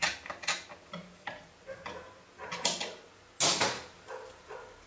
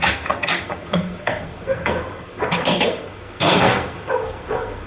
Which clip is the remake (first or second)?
second